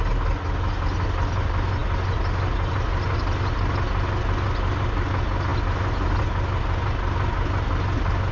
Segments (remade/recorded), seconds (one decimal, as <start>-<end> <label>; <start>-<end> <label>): 0.0-8.3 recorded